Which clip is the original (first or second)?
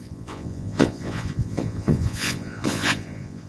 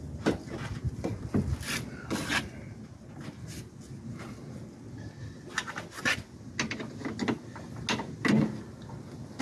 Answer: second